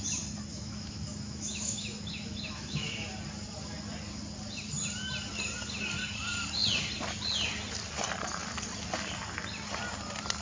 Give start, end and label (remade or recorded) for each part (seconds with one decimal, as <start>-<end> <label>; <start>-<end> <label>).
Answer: 0.0-0.5 recorded; 0.5-2.9 remade; 2.9-10.4 recorded